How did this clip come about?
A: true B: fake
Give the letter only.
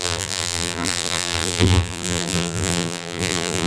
B